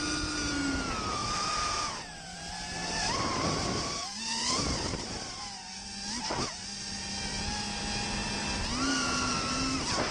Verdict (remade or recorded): recorded